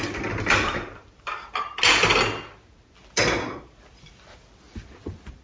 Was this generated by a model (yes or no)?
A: no